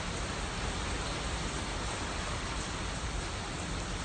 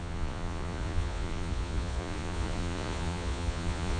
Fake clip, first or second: second